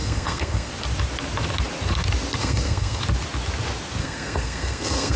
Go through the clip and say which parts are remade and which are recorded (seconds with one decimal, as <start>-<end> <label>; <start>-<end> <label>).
0.0-0.7 remade; 0.7-2.4 recorded; 2.4-3.0 remade; 3.0-4.0 recorded; 4.0-5.2 remade